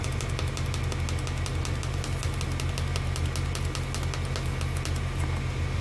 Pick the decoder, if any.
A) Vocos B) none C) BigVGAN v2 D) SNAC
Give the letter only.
B